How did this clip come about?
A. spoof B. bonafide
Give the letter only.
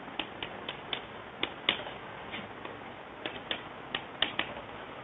B